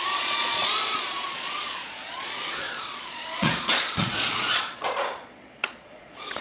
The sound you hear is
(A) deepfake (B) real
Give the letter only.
A